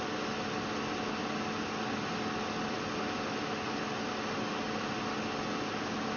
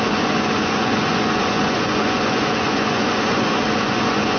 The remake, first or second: second